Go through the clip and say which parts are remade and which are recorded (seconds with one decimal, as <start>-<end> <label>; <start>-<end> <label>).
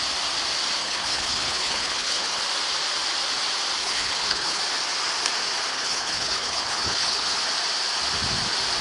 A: 0.0-0.8 recorded; 0.8-2.4 remade; 2.4-3.8 recorded; 3.8-4.6 remade; 4.6-5.7 recorded; 5.7-7.4 remade; 7.4-8.8 recorded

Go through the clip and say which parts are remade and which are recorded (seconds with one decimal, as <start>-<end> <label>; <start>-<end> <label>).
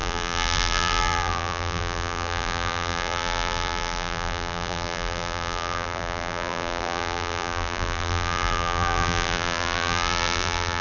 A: 0.0-10.8 remade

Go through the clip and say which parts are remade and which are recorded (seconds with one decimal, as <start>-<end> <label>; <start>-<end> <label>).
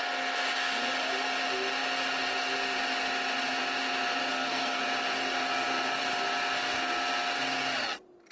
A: 0.0-4.3 recorded; 4.3-4.8 remade; 4.8-8.3 recorded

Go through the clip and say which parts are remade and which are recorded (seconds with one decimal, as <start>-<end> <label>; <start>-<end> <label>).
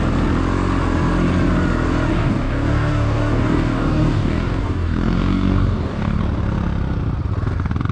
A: 0.0-2.1 recorded; 2.1-6.2 remade; 6.2-7.9 recorded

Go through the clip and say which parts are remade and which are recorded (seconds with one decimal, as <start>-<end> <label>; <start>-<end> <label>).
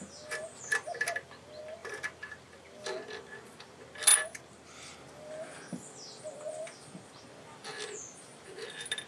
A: 0.0-9.1 recorded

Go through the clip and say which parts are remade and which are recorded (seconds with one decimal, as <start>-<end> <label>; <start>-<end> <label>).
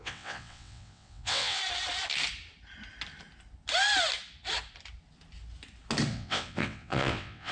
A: 0.0-1.6 remade; 1.6-6.1 recorded; 6.1-7.5 remade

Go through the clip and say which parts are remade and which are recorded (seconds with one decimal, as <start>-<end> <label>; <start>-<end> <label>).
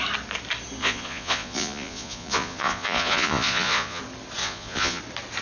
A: 0.0-0.8 recorded; 0.8-4.0 remade; 4.0-4.4 recorded; 4.4-5.0 remade; 5.0-5.4 recorded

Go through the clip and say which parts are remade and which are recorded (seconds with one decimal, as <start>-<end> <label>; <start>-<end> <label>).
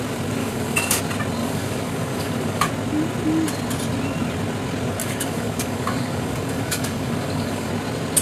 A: 0.0-0.4 recorded; 0.4-1.0 remade; 1.0-1.4 recorded; 1.4-2.7 remade; 2.7-5.0 recorded; 5.0-7.7 remade; 7.7-8.2 recorded